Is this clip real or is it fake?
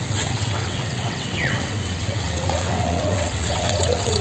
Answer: fake